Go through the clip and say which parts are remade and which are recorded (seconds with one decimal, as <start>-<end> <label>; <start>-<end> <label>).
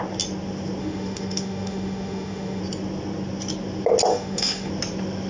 0.0-0.8 recorded; 0.8-2.6 remade; 2.6-4.1 recorded; 4.1-4.7 remade; 4.7-5.3 recorded